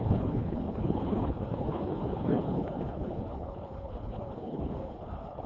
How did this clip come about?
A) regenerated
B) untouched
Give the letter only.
A